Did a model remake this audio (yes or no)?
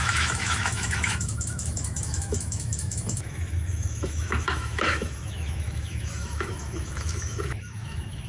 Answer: yes